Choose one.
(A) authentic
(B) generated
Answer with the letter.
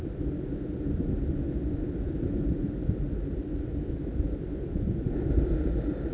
A